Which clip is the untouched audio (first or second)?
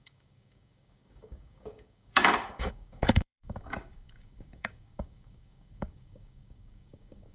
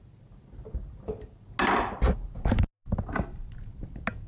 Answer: second